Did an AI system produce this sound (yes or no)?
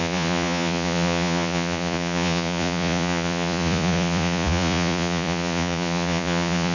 yes